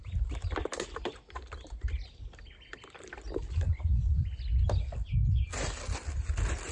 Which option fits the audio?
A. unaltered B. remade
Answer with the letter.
A